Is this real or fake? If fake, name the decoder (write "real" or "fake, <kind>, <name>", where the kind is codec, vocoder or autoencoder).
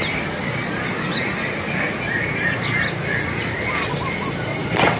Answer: real